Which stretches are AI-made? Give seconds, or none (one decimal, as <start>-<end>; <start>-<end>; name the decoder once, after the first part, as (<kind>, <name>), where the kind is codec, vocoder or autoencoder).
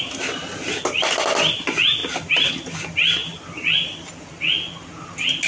none